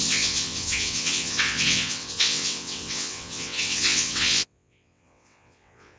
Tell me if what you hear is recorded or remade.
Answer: remade